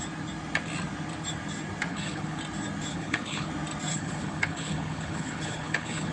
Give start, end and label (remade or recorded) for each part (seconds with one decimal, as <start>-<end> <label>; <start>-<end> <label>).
0.0-1.9 recorded; 1.9-2.4 remade; 2.4-2.9 recorded; 2.9-3.5 remade; 3.5-3.9 recorded; 3.9-6.1 remade